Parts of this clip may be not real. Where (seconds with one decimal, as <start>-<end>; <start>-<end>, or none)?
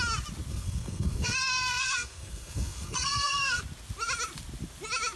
0.5-3.6